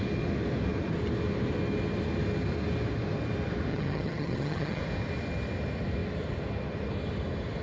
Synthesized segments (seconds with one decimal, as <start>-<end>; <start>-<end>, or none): 3.7-4.8